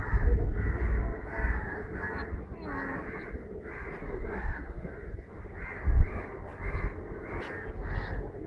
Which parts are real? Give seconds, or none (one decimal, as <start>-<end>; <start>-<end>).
0.0-4.0; 4.9-8.5